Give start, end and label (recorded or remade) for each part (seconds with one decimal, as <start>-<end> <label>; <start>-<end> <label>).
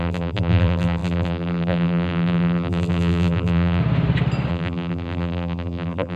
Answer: 0.0-3.8 remade; 3.8-4.5 recorded; 4.5-6.2 remade